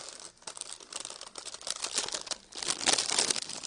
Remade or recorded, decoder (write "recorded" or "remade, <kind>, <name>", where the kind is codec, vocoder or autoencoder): recorded